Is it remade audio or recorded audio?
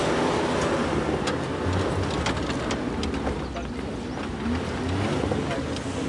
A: recorded